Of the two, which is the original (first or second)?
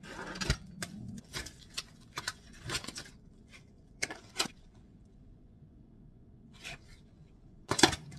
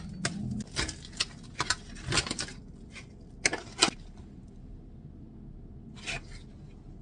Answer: second